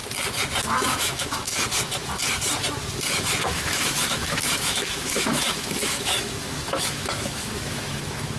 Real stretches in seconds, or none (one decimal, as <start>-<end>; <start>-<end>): 0.0-0.7; 1.5-3.4